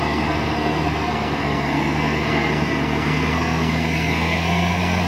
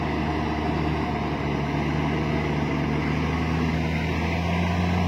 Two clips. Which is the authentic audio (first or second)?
second